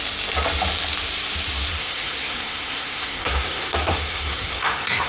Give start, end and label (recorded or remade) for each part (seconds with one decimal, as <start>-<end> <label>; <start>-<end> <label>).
0.0-1.7 recorded; 1.7-5.1 remade

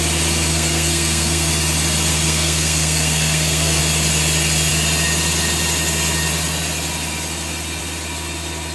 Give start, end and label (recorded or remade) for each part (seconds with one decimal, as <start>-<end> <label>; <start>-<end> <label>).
0.0-0.5 recorded; 0.5-1.5 remade; 1.5-2.1 recorded; 2.1-3.8 remade; 3.8-8.7 recorded

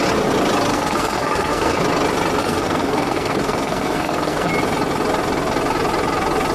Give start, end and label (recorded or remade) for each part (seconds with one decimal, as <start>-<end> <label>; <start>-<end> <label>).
0.0-0.7 recorded; 0.7-1.8 remade; 1.8-2.4 recorded; 2.4-4.5 remade; 4.5-6.5 recorded